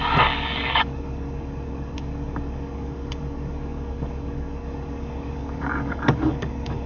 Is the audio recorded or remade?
remade